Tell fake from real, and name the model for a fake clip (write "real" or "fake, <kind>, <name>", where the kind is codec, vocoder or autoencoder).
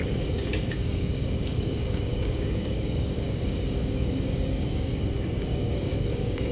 fake, codec, DAC